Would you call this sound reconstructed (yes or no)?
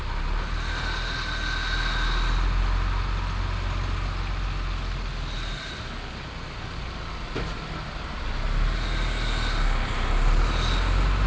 no